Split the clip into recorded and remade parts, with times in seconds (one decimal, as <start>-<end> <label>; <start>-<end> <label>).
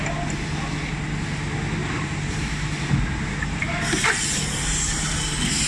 0.0-1.8 recorded; 1.8-5.2 remade; 5.2-5.7 recorded